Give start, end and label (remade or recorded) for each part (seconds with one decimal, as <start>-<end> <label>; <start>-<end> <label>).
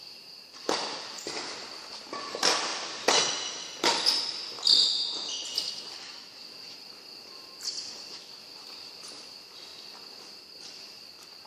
0.0-11.5 recorded